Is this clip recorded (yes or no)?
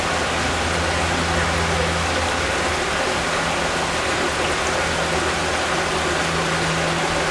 yes